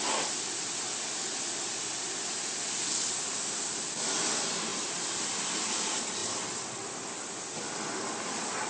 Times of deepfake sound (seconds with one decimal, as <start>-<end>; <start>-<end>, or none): 4.7-5.6; 6.2-7.9